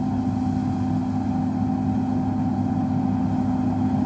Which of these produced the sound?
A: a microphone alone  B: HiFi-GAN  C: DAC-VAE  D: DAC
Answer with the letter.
A